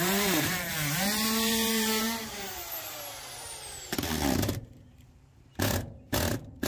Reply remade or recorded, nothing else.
remade